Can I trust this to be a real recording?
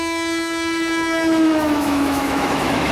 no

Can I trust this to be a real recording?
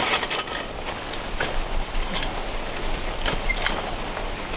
yes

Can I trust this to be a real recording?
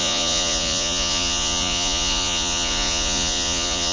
no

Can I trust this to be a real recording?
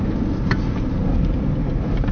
yes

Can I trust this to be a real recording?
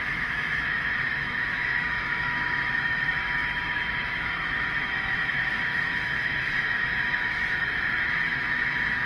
no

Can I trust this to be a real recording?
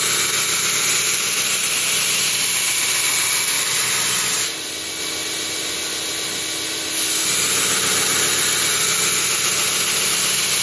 yes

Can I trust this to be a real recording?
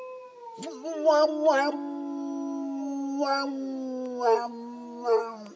yes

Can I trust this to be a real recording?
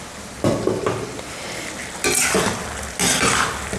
yes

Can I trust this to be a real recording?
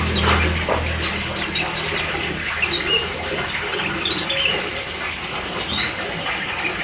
yes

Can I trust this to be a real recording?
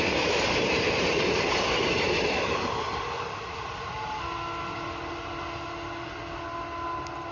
yes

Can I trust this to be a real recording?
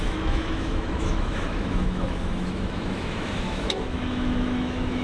no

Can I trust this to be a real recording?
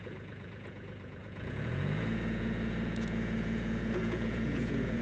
no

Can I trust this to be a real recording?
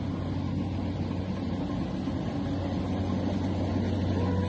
yes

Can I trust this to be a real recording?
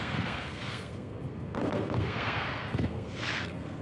no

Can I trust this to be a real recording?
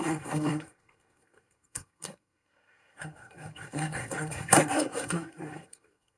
no